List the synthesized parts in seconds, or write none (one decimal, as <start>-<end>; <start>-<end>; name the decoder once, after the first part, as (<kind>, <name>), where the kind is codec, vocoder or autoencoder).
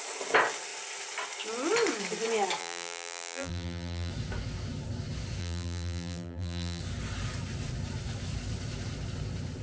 2.6-4.1 (vocoder, BigVGAN v2); 5.4-6.8